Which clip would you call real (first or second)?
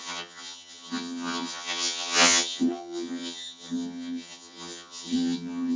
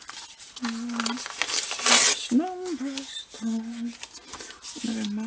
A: second